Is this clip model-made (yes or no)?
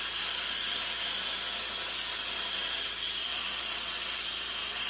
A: no